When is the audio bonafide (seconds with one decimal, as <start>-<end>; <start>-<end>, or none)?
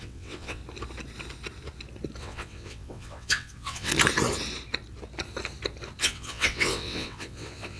0.6-2.2; 3.9-6.0